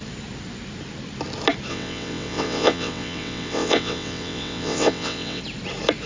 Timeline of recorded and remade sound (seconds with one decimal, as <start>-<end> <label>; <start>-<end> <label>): 0.0-1.7 recorded; 1.7-5.4 remade; 5.4-6.1 recorded